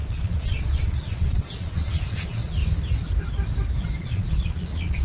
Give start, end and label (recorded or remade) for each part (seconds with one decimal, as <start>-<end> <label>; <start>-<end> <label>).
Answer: 0.0-2.6 remade; 2.6-4.0 recorded; 4.0-5.0 remade